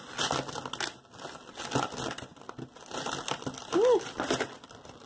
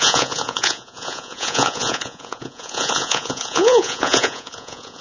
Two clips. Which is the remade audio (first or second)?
second